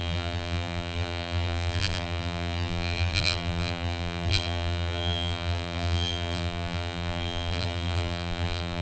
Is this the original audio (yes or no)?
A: no